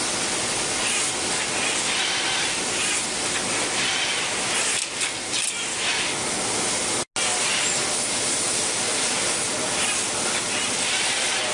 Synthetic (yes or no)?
no